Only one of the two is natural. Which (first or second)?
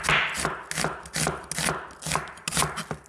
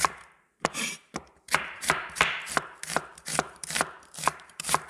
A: first